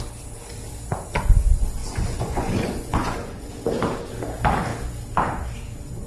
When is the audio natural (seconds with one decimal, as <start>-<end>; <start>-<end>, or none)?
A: 0.0-1.8; 3.5-6.1